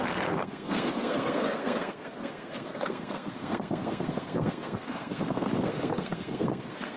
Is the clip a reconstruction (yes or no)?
yes